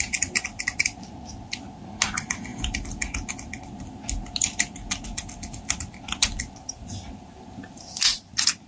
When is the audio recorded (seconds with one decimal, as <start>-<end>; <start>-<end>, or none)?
0.0-8.7